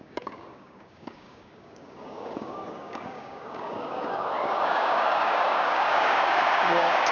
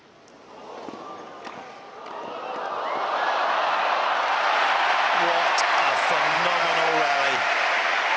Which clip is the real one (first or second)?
second